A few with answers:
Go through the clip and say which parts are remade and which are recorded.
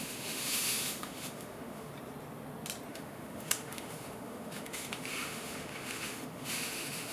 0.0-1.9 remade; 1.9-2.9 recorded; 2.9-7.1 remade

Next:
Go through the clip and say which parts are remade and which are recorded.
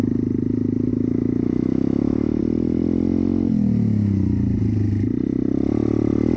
0.0-0.9 recorded; 0.9-2.4 remade; 2.4-6.4 recorded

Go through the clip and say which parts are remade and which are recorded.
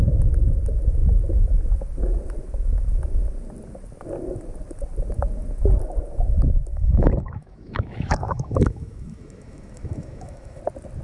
0.0-6.7 recorded; 6.7-10.6 remade; 10.6-11.0 recorded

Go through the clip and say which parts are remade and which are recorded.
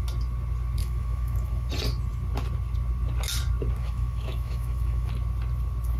0.0-0.8 recorded; 0.8-1.7 remade; 1.7-3.8 recorded; 3.8-5.1 remade; 5.1-6.0 recorded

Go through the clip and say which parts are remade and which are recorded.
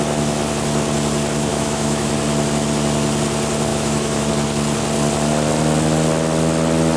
0.0-1.5 recorded; 1.5-2.1 remade; 2.1-3.7 recorded; 3.7-4.3 remade; 4.3-7.0 recorded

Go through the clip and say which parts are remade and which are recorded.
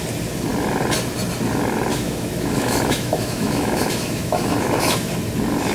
0.0-1.9 recorded; 1.9-5.1 remade; 5.1-5.7 recorded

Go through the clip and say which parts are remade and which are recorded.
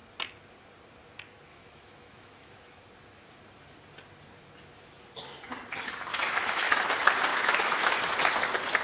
0.0-1.5 recorded; 1.5-2.8 remade; 2.8-6.1 recorded; 6.1-6.8 remade; 6.8-7.3 recorded; 7.3-8.0 remade; 8.0-8.8 recorded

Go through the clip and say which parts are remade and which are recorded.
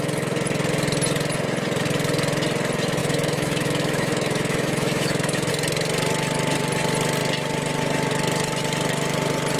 0.0-3.0 recorded; 3.0-5.5 remade; 5.5-9.6 recorded